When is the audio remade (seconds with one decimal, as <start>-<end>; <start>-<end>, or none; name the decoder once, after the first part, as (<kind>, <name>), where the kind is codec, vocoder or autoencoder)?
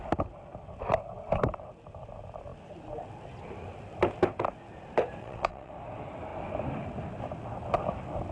5.2-5.7 (vocoder, WaveNeXt)